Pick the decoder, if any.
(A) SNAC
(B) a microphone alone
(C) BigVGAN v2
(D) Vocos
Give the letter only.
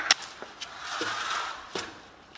B